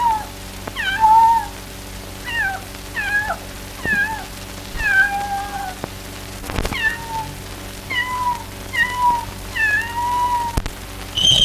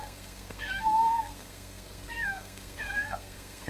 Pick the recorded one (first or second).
first